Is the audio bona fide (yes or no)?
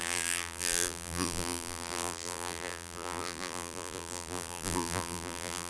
no